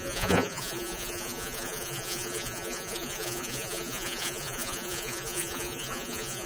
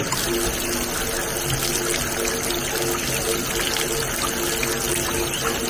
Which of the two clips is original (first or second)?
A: second